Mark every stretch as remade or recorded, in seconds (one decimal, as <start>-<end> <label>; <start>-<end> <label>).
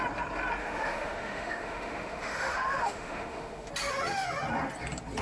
0.0-0.6 recorded; 0.6-3.7 remade; 3.7-5.2 recorded